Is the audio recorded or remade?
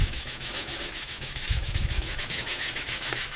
remade